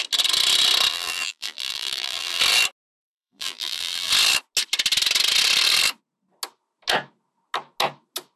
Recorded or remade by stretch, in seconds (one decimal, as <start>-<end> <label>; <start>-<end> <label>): 0.0-0.9 recorded; 0.9-2.4 remade; 2.4-3.0 recorded; 3.0-4.1 remade; 4.1-8.4 recorded